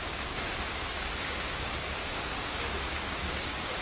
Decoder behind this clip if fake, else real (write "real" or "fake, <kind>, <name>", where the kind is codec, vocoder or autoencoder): fake, codec, DAC